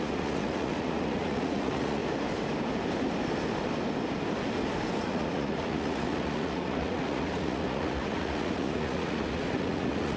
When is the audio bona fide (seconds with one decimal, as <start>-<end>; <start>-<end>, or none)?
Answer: 2.0-5.0